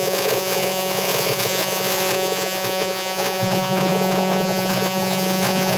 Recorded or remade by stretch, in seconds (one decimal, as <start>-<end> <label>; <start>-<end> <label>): 0.0-5.8 remade